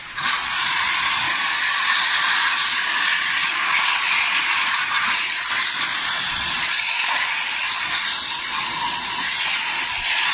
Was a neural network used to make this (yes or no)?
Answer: yes